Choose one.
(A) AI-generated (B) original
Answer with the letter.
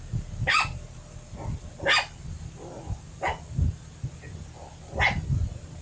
B